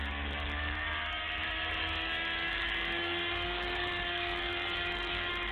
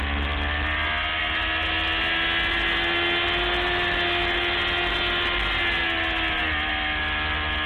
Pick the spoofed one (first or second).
first